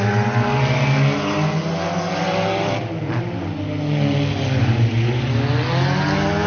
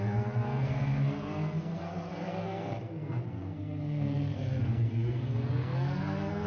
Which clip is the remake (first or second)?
second